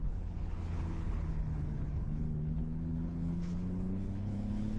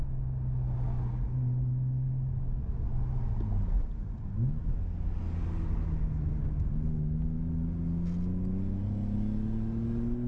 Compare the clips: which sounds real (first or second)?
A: second